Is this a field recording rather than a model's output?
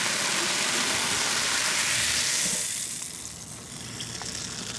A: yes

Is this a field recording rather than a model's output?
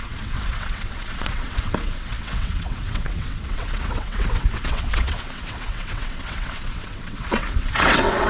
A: no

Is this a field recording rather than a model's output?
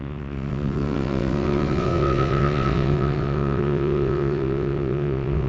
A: no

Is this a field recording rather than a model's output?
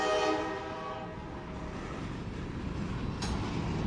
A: yes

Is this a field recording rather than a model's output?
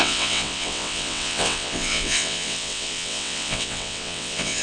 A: no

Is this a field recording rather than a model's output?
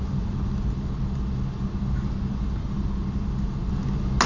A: yes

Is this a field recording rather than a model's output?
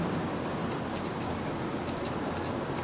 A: yes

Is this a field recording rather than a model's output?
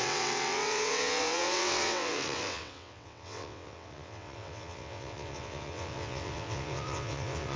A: no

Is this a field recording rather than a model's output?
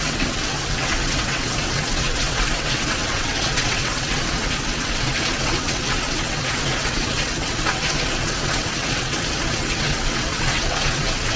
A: no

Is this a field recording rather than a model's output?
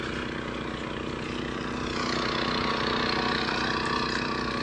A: yes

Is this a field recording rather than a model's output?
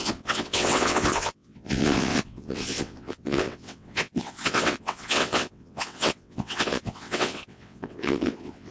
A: no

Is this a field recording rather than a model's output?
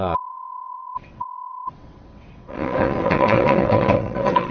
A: no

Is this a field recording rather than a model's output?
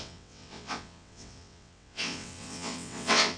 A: no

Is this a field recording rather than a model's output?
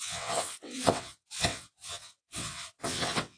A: no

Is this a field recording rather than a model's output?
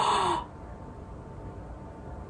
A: yes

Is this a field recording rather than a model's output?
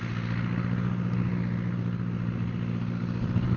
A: yes